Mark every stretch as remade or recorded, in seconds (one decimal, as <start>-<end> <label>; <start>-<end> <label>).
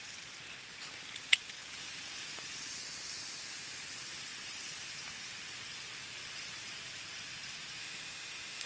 0.0-7.8 recorded; 7.8-8.7 remade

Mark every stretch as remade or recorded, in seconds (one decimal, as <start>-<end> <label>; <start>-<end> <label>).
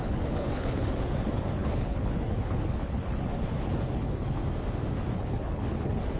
0.0-4.4 remade; 4.4-5.1 recorded; 5.1-6.2 remade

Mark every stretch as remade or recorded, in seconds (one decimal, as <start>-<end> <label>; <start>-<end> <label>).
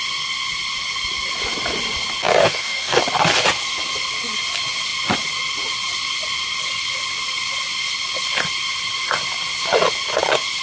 0.0-2.4 recorded; 2.4-3.0 remade; 3.0-10.6 recorded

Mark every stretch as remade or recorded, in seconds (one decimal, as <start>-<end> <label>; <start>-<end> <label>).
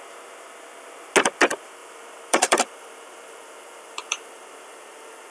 0.0-1.8 recorded; 1.8-5.3 remade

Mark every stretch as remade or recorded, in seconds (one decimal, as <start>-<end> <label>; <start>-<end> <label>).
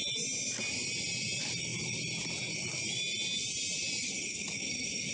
0.0-4.0 recorded; 4.0-5.1 remade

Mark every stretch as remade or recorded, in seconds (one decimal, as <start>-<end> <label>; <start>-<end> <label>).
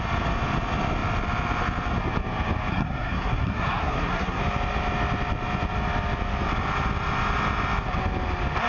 0.0-2.7 recorded; 2.7-4.4 remade; 4.4-8.7 recorded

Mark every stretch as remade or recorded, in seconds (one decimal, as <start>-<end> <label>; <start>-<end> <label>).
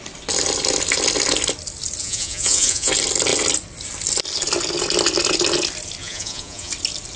0.0-2.0 recorded; 2.0-2.9 remade; 2.9-6.0 recorded; 6.0-6.7 remade; 6.7-7.2 recorded